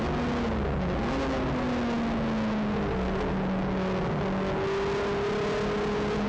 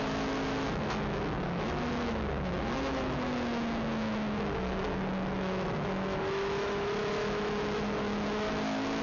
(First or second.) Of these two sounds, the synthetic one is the second